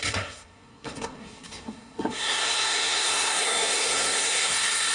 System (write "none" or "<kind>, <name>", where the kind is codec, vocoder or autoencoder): codec, SNAC